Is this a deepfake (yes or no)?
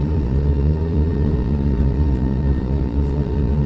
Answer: yes